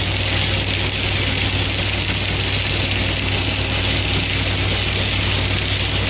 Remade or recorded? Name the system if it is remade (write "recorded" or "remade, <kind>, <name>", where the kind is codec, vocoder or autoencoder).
recorded